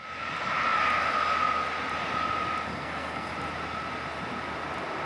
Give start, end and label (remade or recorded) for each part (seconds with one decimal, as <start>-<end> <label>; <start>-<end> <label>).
0.0-2.7 recorded; 2.7-3.3 remade; 3.3-5.0 recorded